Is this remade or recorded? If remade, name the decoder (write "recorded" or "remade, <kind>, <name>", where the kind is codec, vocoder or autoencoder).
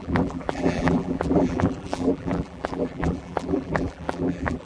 remade, vocoder, BigVGAN v2